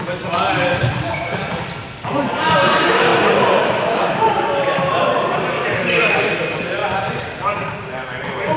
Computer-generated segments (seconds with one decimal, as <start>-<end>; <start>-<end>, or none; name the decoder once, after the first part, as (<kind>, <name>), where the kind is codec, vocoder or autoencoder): 0.0-3.1 (vocoder, BigVGAN v2); 3.6-6.8; 7.6-8.6